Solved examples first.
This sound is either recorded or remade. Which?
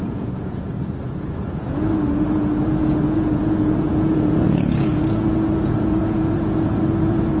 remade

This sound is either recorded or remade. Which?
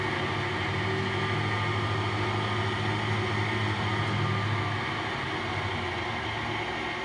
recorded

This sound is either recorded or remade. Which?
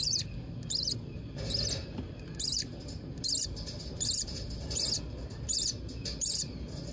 recorded